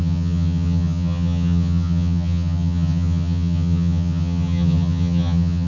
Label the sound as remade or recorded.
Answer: remade